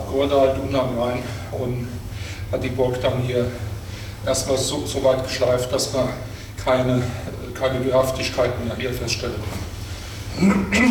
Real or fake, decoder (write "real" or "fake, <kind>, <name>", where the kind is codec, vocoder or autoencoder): fake, codec, DAC